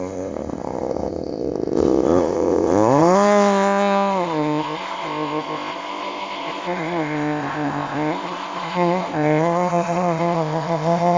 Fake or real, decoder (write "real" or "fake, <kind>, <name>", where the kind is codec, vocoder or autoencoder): fake, codec, ZipCodec